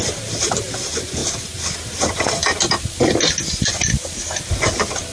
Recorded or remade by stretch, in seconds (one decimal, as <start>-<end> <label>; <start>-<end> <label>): 0.0-5.1 recorded